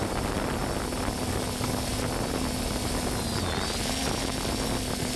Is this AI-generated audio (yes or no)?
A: no